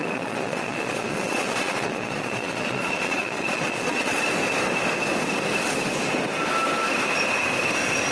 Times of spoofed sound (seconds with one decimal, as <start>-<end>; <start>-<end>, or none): 0.0-4.2